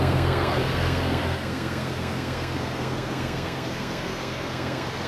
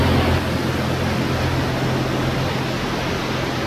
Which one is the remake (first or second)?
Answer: first